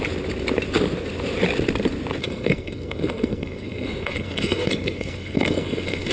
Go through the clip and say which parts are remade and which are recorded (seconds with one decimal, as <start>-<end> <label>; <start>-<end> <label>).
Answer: 0.0-2.2 recorded; 2.2-6.1 remade